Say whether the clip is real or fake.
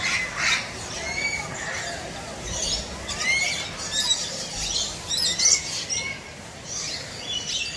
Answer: real